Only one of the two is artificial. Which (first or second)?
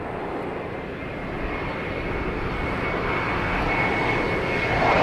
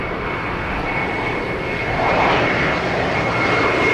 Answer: second